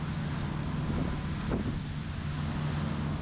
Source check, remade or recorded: recorded